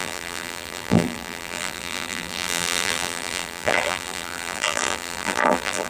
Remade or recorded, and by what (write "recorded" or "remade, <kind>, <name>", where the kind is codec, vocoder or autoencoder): remade, vocoder, BigVGAN v2